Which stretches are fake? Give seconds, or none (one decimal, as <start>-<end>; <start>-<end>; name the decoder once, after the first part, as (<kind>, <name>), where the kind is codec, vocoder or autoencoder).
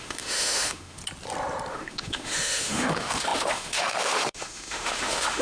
0.0-1.0 (autoencoder, DAC-VAE); 1.7-5.4